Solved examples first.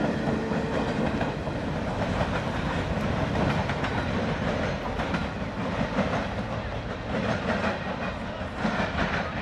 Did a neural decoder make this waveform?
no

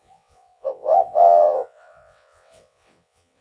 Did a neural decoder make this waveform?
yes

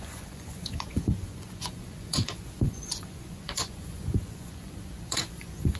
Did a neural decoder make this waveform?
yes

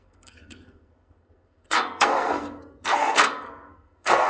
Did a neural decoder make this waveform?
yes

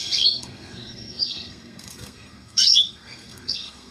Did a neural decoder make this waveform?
yes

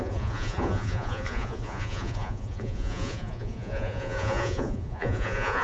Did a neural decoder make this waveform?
yes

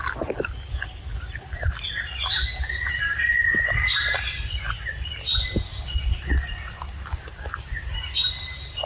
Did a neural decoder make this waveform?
no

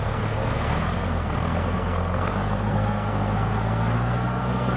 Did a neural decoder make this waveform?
yes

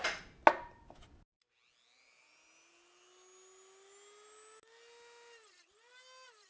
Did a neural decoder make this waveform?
no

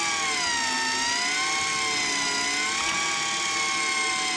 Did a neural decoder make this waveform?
no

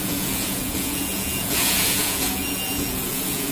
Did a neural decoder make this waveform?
yes